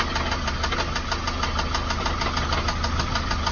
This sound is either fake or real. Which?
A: real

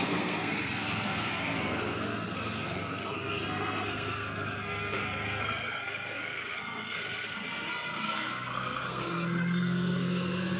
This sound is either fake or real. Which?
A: fake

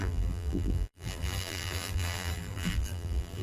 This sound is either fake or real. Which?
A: fake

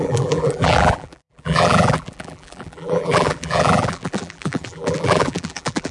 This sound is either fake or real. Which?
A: fake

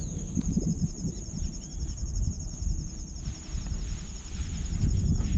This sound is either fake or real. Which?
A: real